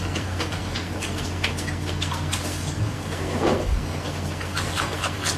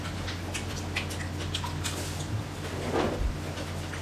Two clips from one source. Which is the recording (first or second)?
second